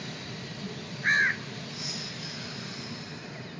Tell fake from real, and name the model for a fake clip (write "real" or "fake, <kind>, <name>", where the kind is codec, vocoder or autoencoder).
real